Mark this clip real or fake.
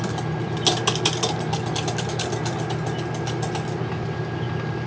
real